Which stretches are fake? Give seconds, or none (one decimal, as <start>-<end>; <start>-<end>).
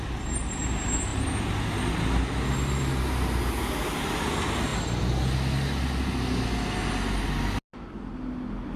none